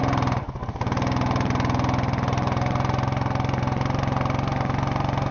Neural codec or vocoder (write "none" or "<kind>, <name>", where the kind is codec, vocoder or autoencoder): none